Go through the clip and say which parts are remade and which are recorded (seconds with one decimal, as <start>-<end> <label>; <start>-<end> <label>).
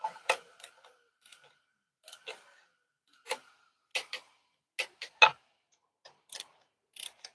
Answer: 0.0-7.3 recorded